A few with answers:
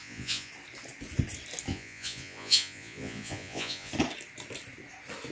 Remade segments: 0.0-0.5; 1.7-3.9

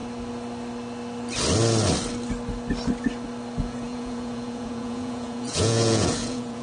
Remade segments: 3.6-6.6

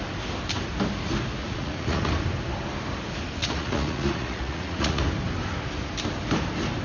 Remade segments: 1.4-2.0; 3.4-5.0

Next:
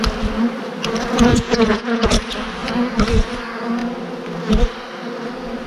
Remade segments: 1.3-2.1

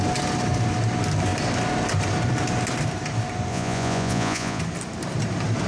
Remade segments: 3.5-4.6

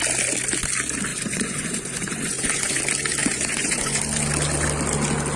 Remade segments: 1.1-2.8; 3.2-4.0

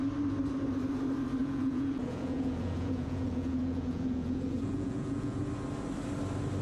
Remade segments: 1.4-5.4

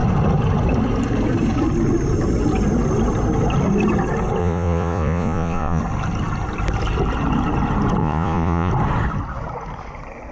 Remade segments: 4.4-5.8; 8.0-8.7